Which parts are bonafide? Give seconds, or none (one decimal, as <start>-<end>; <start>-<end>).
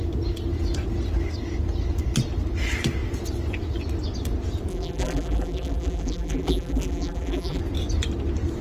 0.0-4.7; 7.6-8.6